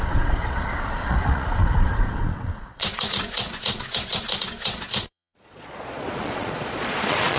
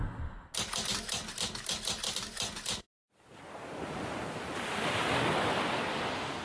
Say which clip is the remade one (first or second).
first